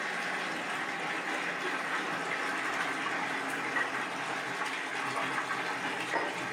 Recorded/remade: recorded